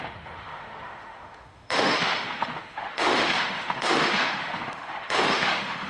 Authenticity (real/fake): fake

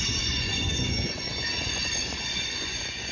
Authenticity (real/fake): fake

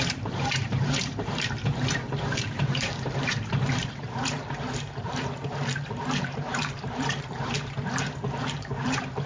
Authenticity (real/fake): fake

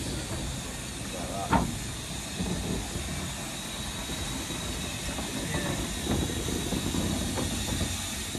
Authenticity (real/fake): real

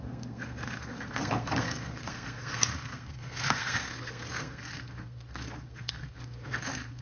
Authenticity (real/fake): fake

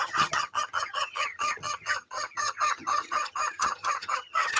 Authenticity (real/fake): fake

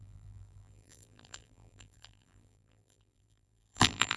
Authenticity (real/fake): fake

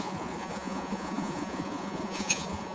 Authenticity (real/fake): fake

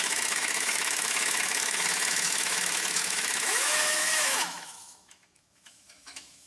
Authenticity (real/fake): fake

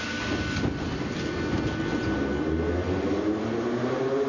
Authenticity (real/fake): real